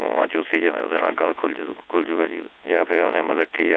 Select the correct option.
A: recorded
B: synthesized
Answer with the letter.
B